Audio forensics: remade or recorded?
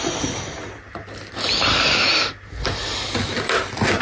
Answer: recorded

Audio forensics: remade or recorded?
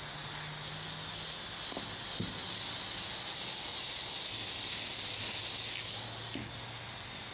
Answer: recorded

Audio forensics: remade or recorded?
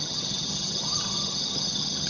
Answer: remade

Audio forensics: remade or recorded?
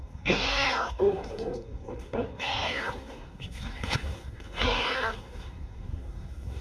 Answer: remade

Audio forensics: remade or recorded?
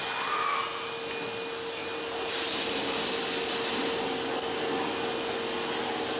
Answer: recorded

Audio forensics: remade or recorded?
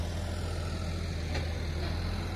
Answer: recorded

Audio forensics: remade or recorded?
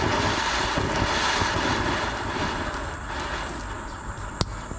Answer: recorded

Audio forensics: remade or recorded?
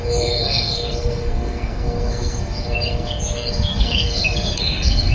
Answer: remade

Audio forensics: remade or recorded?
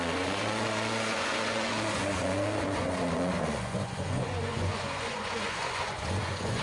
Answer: remade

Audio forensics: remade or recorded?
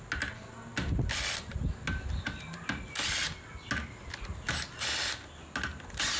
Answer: recorded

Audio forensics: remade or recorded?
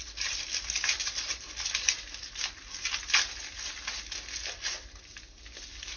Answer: recorded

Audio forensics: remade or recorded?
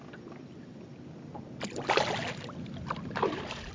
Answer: recorded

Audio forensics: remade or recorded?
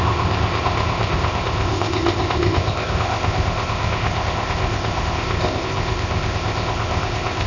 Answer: remade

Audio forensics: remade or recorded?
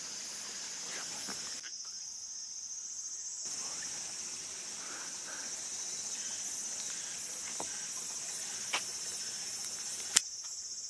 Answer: recorded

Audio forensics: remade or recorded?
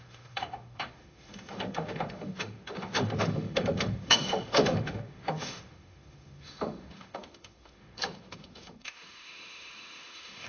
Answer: remade